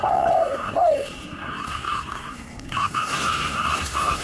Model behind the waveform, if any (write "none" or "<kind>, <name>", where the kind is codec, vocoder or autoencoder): codec, SNAC